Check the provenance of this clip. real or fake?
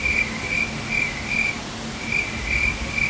fake